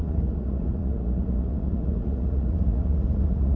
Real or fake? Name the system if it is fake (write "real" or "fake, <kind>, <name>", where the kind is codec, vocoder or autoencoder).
fake, vocoder, Vocos